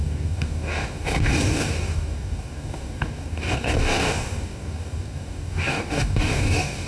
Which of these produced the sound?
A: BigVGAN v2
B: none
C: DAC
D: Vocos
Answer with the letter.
C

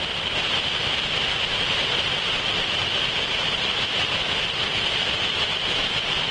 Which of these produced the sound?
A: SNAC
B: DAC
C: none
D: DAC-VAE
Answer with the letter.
C